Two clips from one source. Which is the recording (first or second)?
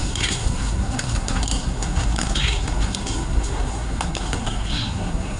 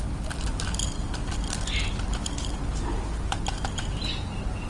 second